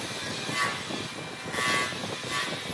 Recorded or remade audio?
recorded